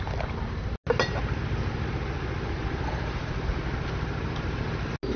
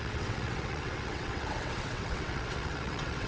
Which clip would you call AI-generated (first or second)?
second